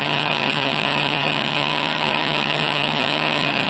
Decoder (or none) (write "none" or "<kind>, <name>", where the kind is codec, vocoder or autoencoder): vocoder, HiFi-GAN